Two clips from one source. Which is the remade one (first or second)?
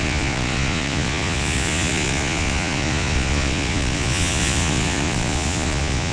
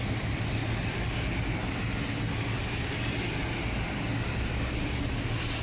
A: first